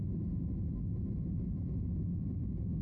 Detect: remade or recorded recorded